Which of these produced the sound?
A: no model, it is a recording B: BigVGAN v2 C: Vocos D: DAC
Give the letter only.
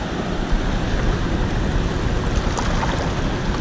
A